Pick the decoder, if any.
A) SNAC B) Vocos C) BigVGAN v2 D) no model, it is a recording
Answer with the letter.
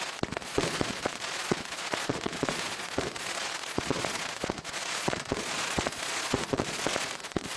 B